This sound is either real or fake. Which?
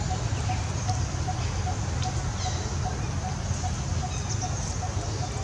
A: real